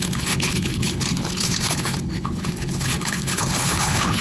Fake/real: fake